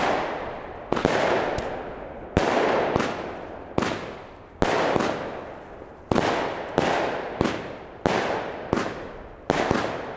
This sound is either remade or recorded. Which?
recorded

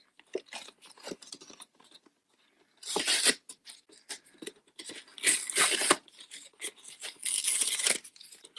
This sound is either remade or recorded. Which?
recorded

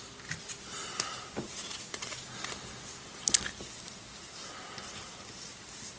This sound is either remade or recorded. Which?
recorded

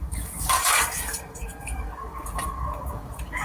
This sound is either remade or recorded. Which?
remade